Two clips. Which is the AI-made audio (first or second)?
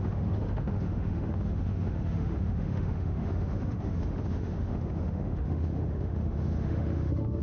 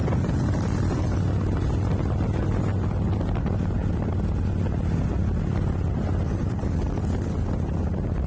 first